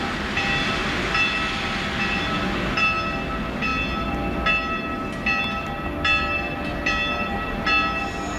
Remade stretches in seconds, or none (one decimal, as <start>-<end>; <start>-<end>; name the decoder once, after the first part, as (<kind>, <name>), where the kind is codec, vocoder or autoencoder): none